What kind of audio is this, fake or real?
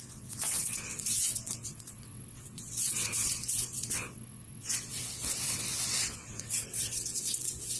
fake